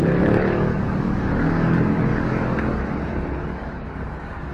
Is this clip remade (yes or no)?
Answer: yes